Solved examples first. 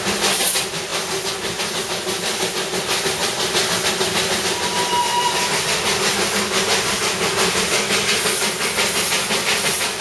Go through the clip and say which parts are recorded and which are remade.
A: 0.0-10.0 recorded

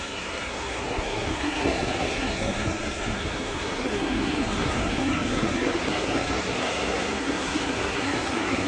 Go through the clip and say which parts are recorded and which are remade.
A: 0.0-8.7 remade

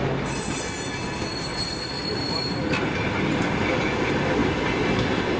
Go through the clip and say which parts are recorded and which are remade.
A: 0.0-5.4 recorded

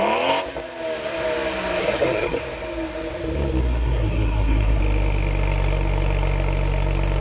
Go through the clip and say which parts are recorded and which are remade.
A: 0.0-1.8 recorded; 1.8-2.4 remade; 2.4-3.6 recorded; 3.6-4.8 remade; 4.8-7.2 recorded

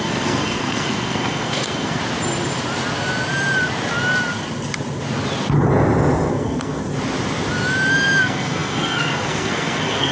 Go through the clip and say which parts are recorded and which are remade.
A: 0.0-2.0 remade; 2.0-6.3 recorded; 6.3-6.8 remade; 6.8-8.2 recorded; 8.2-10.1 remade

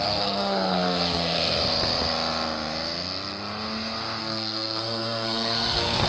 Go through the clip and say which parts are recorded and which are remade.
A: 0.0-1.6 remade; 1.6-4.2 recorded; 4.2-6.1 remade